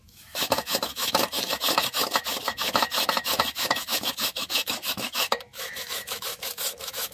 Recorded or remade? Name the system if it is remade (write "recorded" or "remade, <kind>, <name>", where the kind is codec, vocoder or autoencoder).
remade, autoencoder, DAC-VAE